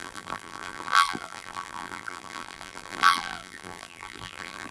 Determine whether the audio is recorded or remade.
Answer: remade